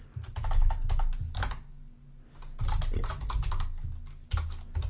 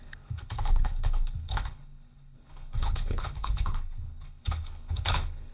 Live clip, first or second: first